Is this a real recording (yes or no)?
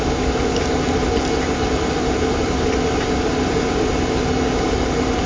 yes